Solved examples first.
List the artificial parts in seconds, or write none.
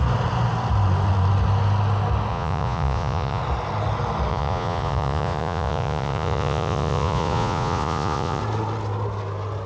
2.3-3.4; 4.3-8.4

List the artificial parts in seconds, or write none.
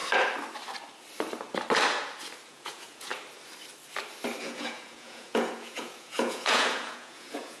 2.5-3.1; 4.4-7.6